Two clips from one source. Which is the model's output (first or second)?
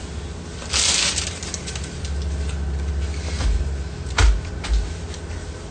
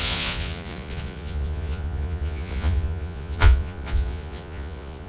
second